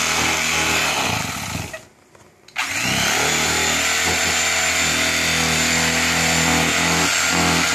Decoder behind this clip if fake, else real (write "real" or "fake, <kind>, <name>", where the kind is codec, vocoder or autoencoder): real